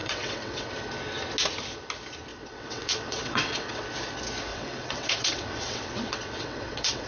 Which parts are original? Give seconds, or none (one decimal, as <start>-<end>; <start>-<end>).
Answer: 0.7-2.3; 3.8-4.5